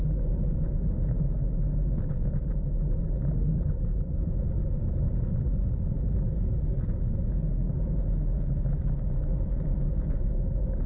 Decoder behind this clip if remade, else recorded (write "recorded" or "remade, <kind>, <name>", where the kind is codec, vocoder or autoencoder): recorded